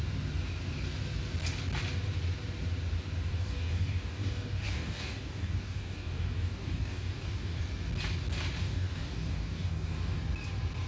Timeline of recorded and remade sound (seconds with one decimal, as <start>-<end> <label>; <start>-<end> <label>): 0.0-3.3 recorded; 3.3-7.6 remade; 7.6-8.6 recorded; 8.6-10.2 remade; 10.2-10.9 recorded